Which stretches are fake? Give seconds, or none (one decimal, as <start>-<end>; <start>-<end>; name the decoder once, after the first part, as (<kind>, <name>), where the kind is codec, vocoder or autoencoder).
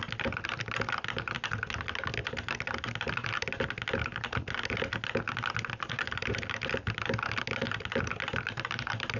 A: none